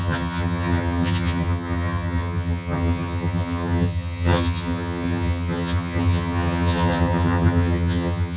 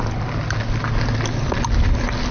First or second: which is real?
second